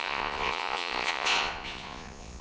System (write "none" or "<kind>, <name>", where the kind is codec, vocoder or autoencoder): vocoder, Vocos